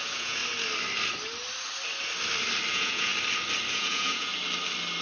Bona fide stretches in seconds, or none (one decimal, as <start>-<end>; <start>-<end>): 0.4-2.7; 3.1-3.7; 4.3-5.0